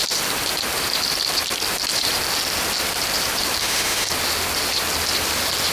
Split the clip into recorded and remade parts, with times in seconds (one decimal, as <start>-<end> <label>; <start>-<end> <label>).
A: 0.0-3.6 recorded; 3.6-4.1 remade; 4.1-5.7 recorded